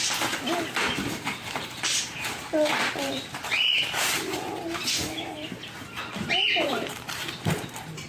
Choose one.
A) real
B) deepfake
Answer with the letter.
B